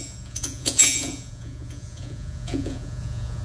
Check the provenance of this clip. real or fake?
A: fake